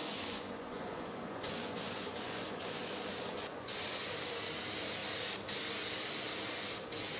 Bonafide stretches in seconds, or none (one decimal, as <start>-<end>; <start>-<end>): 4.1-7.2